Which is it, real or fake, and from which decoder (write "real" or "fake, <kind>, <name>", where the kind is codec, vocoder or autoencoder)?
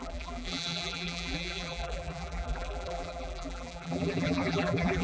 fake, vocoder, BigVGAN v2